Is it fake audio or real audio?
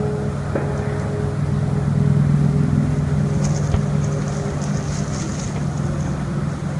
real